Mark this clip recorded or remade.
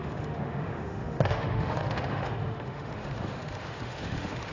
remade